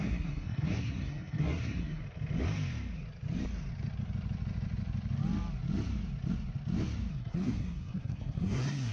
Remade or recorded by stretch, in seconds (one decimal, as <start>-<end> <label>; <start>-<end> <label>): 0.0-2.0 remade; 2.0-7.1 recorded; 7.1-8.9 remade

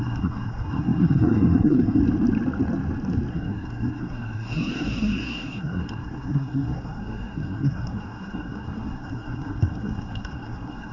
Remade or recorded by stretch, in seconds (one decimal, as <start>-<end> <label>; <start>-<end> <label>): 0.0-2.0 remade; 2.0-3.3 recorded; 3.3-10.9 remade

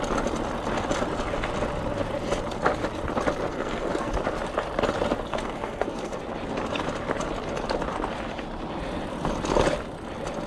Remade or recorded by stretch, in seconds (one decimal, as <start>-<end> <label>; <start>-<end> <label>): 0.0-3.5 recorded; 3.5-4.1 remade; 4.1-5.3 recorded; 5.3-6.2 remade; 6.2-10.5 recorded

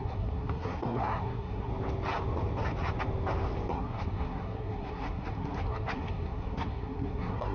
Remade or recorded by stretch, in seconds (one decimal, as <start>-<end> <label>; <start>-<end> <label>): 0.0-1.7 remade; 1.7-3.7 recorded; 3.7-7.5 remade

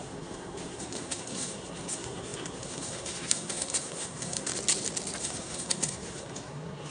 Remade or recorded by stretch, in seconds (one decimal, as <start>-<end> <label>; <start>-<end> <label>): 0.0-4.5 remade; 4.5-5.2 recorded; 5.2-6.9 remade

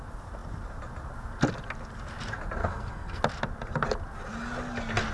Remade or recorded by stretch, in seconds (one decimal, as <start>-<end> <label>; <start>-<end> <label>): 0.0-2.6 recorded; 2.6-3.2 remade; 3.2-5.1 recorded